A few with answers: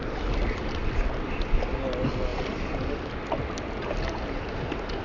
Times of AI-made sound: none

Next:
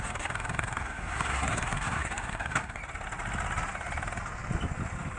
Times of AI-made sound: 0.0-2.8